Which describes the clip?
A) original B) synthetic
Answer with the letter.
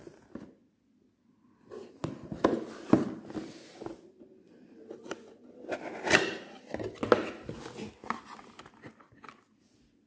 A